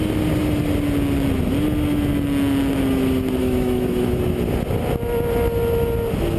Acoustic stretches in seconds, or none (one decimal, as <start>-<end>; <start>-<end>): 0.0-3.4; 4.2-6.4